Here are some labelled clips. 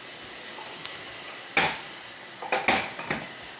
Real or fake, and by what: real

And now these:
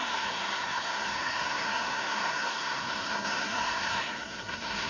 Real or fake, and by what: fake, codec, SNAC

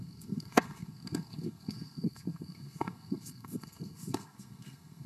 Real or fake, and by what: fake, codec, SNAC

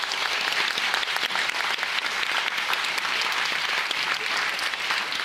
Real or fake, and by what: real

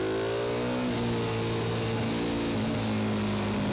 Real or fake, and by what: real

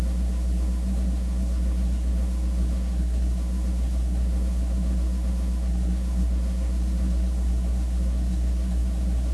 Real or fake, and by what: fake, codec, SNAC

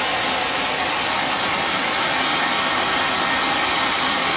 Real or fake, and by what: real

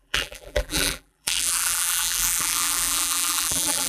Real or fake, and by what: fake, vocoder, BigVGAN v2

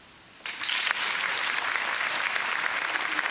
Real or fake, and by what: real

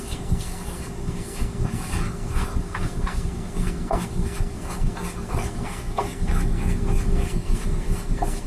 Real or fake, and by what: fake, codec, SNAC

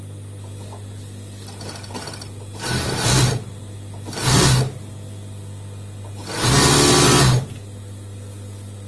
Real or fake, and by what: real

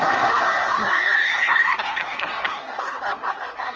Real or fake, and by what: fake, codec, SNAC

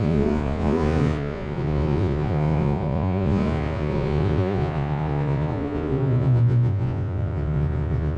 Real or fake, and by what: fake, vocoder, Vocos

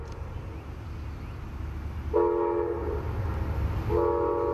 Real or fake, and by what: real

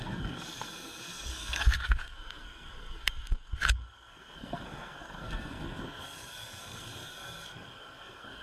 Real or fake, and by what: fake, codec, SNAC